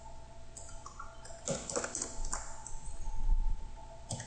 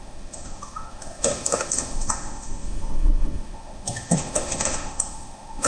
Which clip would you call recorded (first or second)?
first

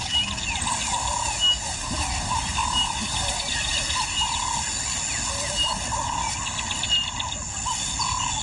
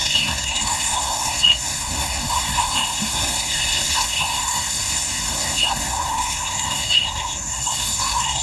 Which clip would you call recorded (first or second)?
first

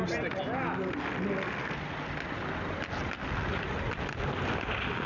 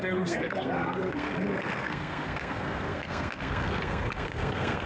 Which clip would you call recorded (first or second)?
first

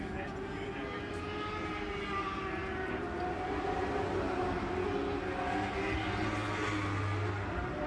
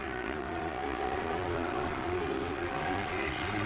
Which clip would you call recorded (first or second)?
first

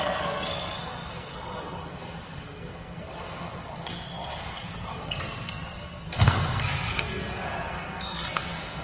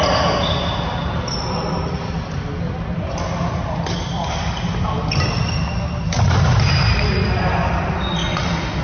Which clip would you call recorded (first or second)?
second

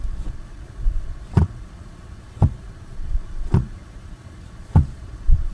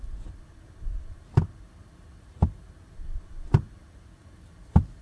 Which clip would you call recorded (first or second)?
second